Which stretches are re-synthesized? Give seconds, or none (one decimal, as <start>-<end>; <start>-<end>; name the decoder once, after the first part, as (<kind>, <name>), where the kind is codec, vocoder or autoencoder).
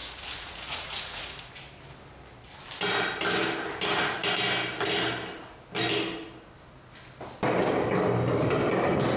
0.0-1.5 (vocoder, Vocos)